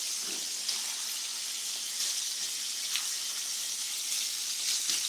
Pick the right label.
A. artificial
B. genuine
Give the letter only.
B